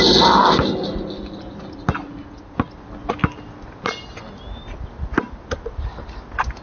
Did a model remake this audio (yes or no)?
no